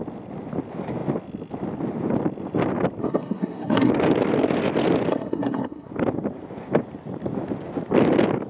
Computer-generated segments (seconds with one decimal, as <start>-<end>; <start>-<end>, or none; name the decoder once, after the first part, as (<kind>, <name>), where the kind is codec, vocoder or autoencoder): 3.0-3.9 (codec, SNAC); 5.1-5.9